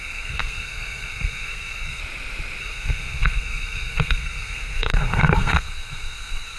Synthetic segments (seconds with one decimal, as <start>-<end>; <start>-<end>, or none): 0.0-2.0; 2.6-6.6